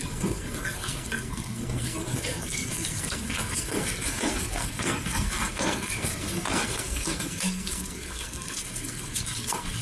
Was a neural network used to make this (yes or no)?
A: yes